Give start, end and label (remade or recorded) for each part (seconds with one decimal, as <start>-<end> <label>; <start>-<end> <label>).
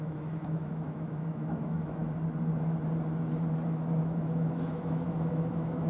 0.0-2.0 remade; 2.0-4.0 recorded; 4.0-5.9 remade